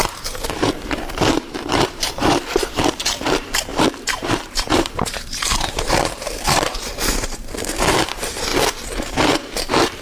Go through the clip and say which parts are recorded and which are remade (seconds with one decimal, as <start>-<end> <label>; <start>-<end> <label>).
0.0-8.5 remade; 8.5-9.0 recorded; 9.0-10.0 remade